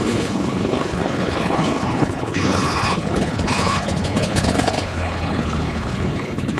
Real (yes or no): no